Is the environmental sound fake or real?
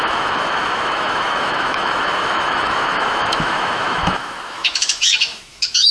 fake